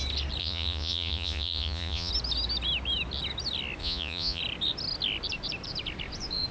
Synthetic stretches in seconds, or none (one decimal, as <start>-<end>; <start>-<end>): 0.4-2.1; 3.8-4.4